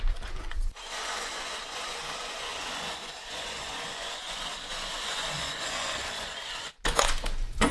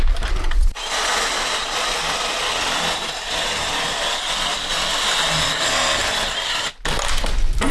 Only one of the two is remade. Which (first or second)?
first